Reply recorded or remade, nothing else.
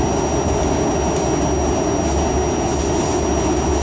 recorded